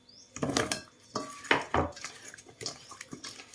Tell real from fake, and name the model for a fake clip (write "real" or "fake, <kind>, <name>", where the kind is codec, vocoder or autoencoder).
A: real